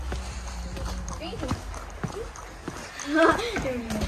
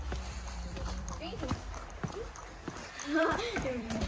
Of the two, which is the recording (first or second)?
first